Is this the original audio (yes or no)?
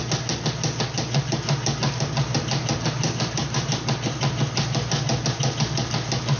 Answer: yes